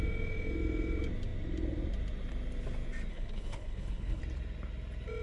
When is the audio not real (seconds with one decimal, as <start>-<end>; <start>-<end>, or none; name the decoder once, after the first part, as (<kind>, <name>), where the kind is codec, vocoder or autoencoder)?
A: 3.1-4.2 (codec, HILCodec)